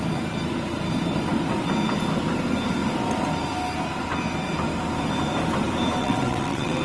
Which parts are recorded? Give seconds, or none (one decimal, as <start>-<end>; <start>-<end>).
0.0-6.0